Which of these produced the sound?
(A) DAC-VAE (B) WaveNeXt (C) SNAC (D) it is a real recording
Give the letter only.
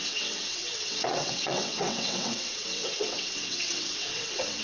B